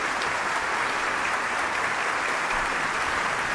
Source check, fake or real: real